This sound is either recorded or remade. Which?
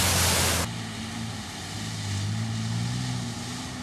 recorded